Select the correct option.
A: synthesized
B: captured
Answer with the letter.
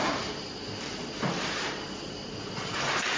B